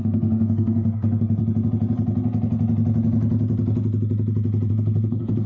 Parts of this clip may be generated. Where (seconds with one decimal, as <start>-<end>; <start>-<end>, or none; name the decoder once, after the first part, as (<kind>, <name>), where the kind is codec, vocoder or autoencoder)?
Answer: 0.0-1.4 (codec, SNAC); 4.7-5.5